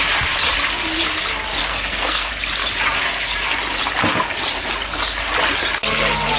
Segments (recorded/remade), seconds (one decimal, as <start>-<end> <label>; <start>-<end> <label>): 0.0-1.6 recorded; 1.6-2.3 remade; 2.3-6.4 recorded